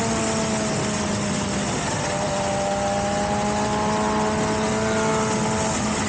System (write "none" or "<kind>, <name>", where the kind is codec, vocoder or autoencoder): none